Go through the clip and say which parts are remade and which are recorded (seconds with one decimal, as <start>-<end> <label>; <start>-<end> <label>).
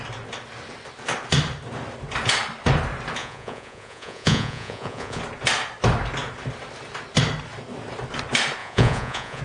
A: 0.0-3.2 recorded; 3.2-5.2 remade; 5.2-8.6 recorded; 8.6-9.4 remade